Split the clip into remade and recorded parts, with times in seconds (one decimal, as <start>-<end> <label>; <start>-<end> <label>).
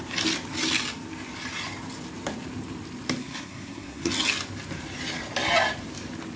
0.0-3.2 recorded; 3.2-4.1 remade; 4.1-6.4 recorded